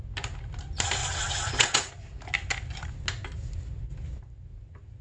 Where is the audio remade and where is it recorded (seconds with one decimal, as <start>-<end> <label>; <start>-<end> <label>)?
0.0-1.0 recorded; 1.0-1.9 remade; 1.9-5.0 recorded